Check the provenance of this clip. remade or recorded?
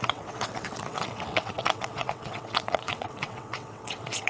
remade